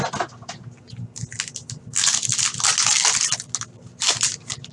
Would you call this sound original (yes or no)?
yes